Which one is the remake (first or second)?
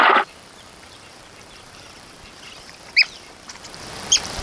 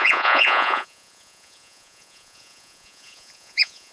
second